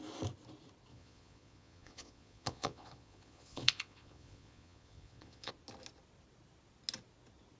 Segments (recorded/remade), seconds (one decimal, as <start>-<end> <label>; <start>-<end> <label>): 0.0-0.9 recorded; 0.9-5.5 remade; 5.5-7.6 recorded

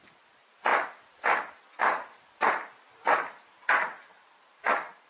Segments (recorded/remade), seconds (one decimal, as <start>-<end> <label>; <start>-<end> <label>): 0.0-5.1 recorded